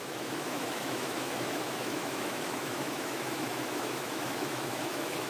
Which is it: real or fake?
fake